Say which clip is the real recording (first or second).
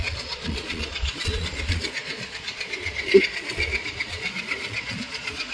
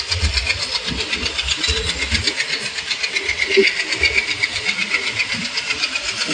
second